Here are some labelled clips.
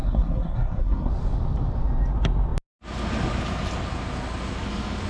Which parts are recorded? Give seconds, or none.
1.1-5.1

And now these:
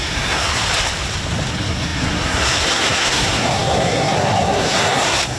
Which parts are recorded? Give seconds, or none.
0.5-1.5